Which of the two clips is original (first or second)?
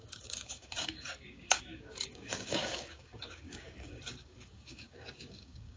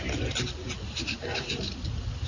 second